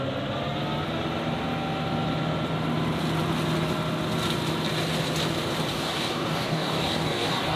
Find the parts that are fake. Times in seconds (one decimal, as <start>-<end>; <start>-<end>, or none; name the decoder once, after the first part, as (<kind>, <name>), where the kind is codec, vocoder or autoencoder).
5.7-7.6 (codec, DAC)